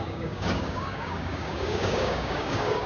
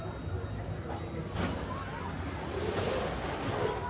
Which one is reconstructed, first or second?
first